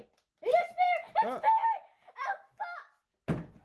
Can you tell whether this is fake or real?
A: real